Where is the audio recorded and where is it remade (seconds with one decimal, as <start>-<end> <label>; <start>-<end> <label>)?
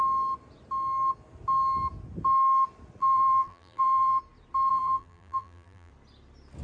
0.0-3.0 recorded; 3.0-4.2 remade; 4.2-4.7 recorded; 4.7-5.9 remade; 5.9-6.6 recorded